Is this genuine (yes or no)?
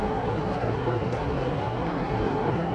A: no